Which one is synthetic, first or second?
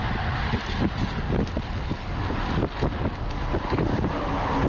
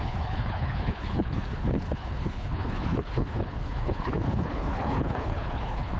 second